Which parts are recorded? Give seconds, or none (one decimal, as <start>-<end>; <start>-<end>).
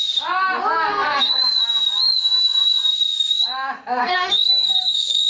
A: 0.0-0.9; 1.4-4.0